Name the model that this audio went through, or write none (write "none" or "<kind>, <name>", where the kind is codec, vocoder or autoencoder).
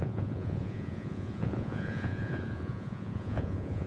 vocoder, Vocos